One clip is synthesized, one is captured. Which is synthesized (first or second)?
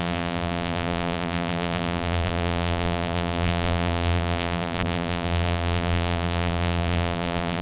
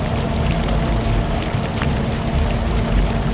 first